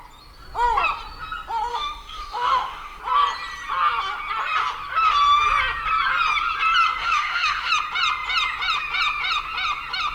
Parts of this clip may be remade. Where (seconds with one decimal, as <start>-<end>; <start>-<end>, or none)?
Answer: 1.7-3.0; 7.0-7.7